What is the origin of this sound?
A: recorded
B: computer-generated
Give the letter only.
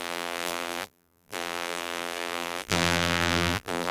B